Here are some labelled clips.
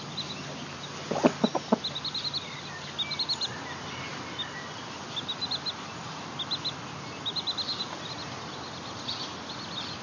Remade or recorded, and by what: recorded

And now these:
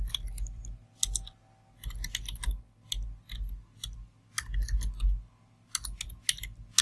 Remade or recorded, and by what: recorded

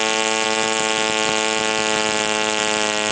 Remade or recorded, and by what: recorded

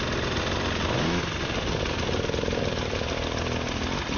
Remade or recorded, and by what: recorded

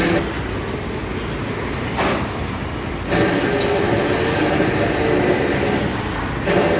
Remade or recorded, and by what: recorded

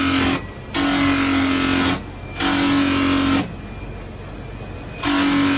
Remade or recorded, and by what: recorded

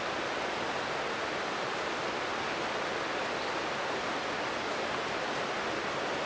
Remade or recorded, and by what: recorded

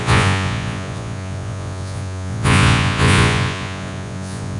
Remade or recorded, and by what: remade, vocoder, Vocos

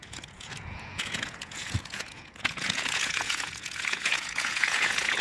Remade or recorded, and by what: remade, vocoder, Vocos